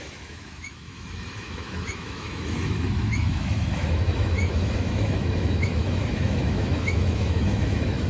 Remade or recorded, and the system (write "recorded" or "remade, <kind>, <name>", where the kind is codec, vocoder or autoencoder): remade, autoencoder, DAC-VAE